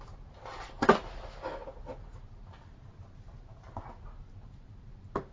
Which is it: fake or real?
real